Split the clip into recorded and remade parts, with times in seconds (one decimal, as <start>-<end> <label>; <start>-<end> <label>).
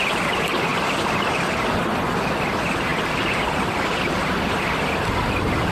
0.0-5.7 recorded